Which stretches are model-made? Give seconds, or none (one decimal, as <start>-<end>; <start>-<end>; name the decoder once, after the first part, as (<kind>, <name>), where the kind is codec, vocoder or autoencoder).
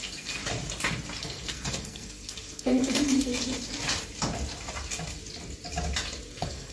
0.0-0.4 (codec, SNAC); 1.2-3.3; 6.3-6.7